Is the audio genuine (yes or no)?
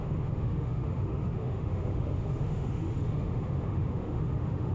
no